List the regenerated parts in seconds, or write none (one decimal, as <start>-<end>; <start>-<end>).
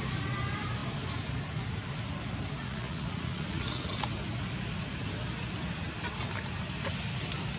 2.6-3.9